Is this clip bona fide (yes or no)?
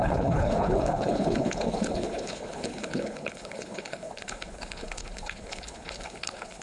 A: no